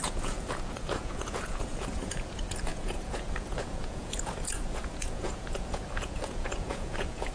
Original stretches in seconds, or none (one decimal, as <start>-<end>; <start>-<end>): none